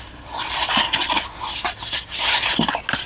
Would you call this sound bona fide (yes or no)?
yes